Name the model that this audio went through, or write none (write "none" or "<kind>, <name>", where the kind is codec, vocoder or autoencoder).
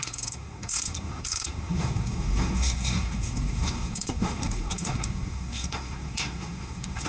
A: codec, SNAC